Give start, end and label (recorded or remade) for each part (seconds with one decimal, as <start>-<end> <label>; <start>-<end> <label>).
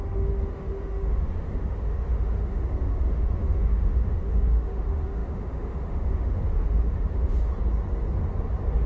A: 0.0-7.5 remade; 7.5-8.9 recorded